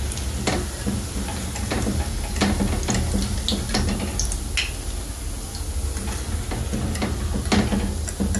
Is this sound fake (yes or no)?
no